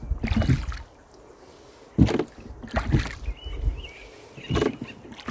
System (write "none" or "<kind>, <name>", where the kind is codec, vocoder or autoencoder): none